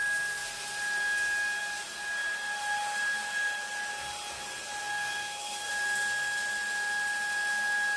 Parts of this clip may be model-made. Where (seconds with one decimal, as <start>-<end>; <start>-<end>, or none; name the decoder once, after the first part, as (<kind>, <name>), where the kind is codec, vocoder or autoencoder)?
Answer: 4.8-5.7 (codec, SNAC)